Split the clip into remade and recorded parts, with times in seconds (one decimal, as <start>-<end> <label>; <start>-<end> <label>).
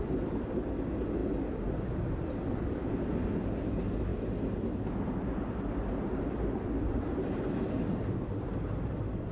0.0-9.3 recorded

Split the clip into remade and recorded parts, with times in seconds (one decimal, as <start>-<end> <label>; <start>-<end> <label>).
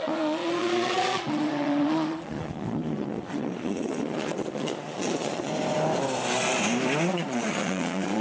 0.0-5.5 remade; 5.5-7.1 recorded; 7.1-8.2 remade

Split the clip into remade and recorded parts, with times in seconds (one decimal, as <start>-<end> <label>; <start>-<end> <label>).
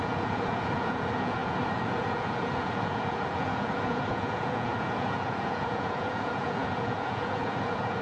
0.0-8.0 remade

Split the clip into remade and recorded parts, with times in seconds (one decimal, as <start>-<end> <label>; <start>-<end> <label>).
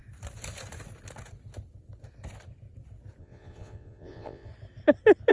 0.0-3.2 recorded; 3.2-4.5 remade; 4.5-5.3 recorded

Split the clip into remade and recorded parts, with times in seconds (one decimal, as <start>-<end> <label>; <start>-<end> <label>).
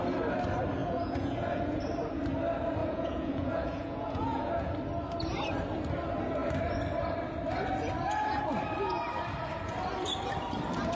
0.0-0.8 recorded; 0.8-1.8 remade; 1.8-2.8 recorded; 2.8-4.7 remade; 4.7-10.9 recorded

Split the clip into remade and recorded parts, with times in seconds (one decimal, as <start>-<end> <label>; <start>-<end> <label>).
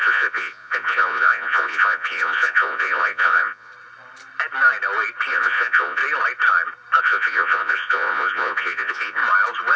0.0-3.7 remade; 3.7-5.3 recorded; 5.3-6.0 remade; 6.0-7.0 recorded; 7.0-9.2 remade; 9.2-9.8 recorded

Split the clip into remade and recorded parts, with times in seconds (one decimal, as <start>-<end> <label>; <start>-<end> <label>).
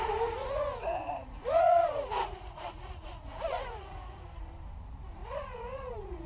0.0-0.4 recorded; 0.4-4.2 remade; 4.2-5.2 recorded; 5.2-6.3 remade